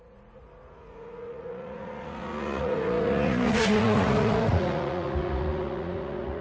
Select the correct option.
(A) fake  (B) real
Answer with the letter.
A